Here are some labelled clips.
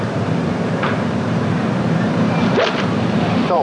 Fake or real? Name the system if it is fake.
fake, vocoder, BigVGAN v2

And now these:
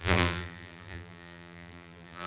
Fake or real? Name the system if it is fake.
fake, vocoder, BigVGAN v2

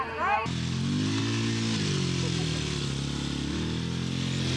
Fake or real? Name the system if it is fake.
real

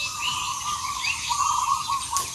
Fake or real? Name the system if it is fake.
real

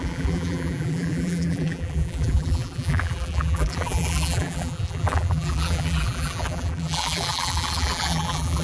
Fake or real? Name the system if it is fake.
fake, vocoder, BigVGAN v2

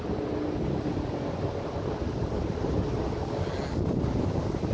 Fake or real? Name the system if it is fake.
real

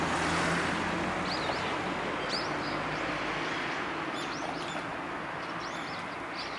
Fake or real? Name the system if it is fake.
real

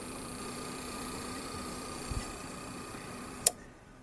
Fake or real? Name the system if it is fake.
fake, vocoder, BigVGAN v2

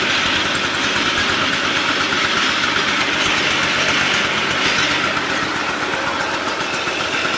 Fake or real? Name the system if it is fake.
real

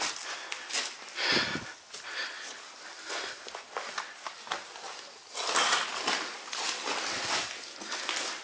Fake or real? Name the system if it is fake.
real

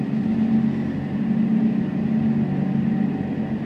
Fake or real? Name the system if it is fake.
real